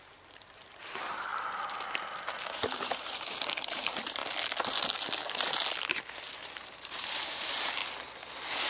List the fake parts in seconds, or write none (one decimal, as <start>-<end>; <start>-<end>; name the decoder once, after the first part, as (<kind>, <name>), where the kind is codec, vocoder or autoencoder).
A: 0.0-1.3 (vocoder, BigVGAN v2); 2.4-4.2; 6.3-7.8